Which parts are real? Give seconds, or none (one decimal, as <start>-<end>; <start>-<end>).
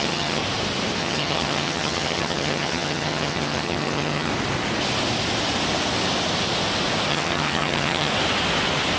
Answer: 0.4-1.0; 4.3-7.1; 8.1-9.0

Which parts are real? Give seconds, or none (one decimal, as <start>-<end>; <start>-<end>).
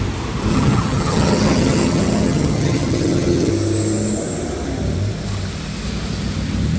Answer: 0.0-0.5; 3.5-6.8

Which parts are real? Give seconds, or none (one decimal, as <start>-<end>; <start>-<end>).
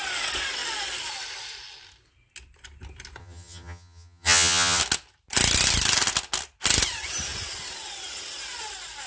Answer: 0.0-3.2; 4.8-9.1